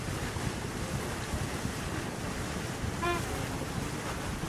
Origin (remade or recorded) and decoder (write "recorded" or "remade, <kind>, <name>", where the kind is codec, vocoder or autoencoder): recorded